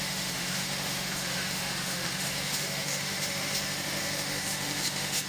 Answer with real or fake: fake